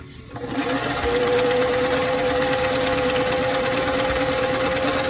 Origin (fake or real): real